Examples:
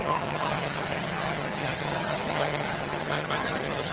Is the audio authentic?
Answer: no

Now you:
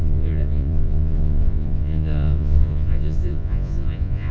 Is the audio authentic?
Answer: no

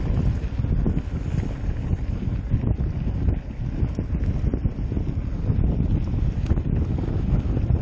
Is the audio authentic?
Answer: yes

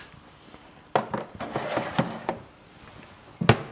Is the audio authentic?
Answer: yes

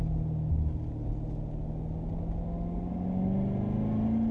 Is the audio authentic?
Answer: yes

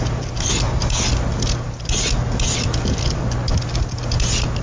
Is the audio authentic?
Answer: yes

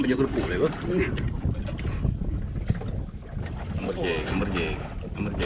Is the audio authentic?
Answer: yes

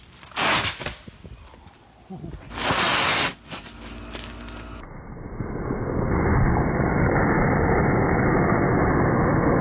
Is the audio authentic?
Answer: yes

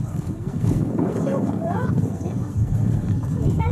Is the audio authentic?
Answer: no